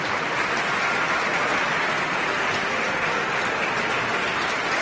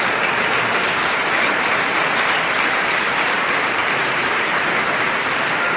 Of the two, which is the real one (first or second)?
first